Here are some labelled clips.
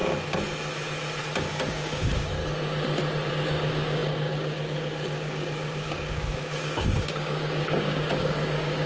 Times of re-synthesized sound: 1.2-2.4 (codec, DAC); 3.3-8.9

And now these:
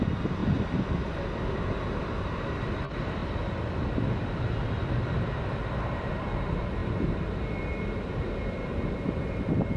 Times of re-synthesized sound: none

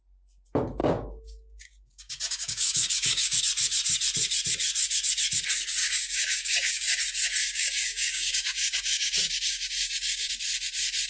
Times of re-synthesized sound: 0.8-3.4 (codec, DAC); 5.8-7.0; 7.4-10.3